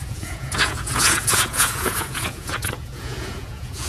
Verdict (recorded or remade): remade